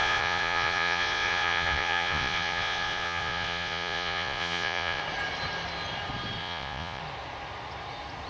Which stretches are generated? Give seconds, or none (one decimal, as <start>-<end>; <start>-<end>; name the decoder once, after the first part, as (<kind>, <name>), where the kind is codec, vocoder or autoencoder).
0.0-5.0 (vocoder, Vocos); 6.4-7.0